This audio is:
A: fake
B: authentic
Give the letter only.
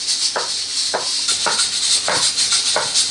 B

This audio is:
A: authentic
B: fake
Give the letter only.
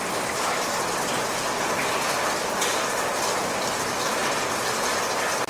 A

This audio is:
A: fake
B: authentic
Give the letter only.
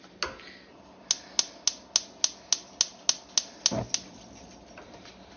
B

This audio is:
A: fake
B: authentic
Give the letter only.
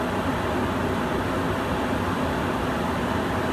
B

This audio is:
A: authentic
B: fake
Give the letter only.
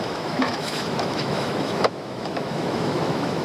B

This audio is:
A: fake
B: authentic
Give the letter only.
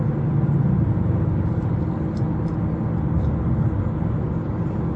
B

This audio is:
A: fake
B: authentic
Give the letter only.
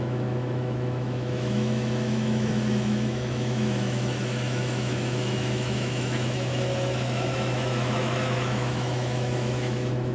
A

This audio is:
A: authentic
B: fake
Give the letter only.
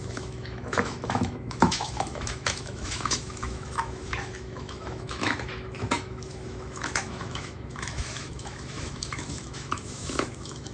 B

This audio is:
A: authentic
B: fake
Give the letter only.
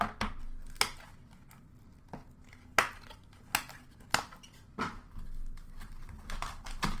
A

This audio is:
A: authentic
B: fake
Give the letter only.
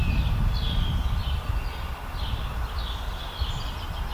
A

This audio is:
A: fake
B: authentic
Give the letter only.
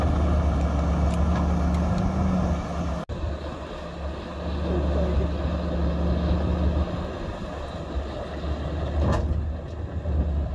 B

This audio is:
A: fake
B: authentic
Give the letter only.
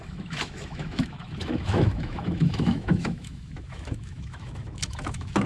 A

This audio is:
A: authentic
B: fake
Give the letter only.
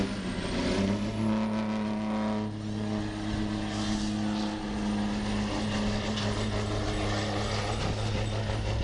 A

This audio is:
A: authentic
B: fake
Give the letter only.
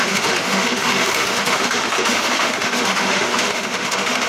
B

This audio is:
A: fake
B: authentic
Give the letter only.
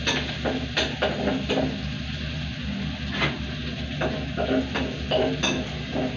B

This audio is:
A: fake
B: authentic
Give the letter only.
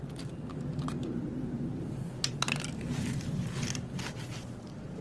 B